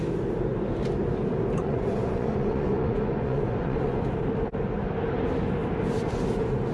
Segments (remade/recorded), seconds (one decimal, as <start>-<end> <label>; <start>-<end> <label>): 0.0-1.6 recorded; 1.6-4.0 remade; 4.0-6.7 recorded